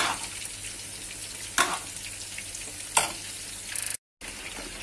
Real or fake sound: real